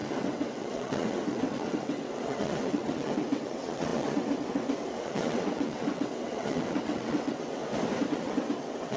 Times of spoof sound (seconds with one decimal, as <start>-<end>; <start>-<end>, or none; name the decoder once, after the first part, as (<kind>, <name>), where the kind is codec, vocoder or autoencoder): 0.0-7.6 (vocoder, WaveNeXt); 8.1-9.0